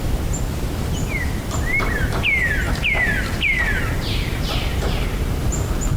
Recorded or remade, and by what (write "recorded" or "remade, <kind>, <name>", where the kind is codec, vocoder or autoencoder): remade, vocoder, BigVGAN v2